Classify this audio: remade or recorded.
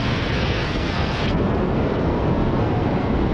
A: remade